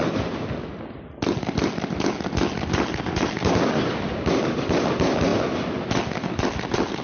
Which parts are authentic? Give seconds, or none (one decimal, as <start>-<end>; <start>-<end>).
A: 0.0-7.0